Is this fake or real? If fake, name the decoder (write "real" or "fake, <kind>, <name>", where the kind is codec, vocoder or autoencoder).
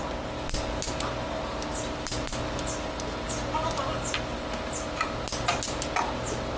real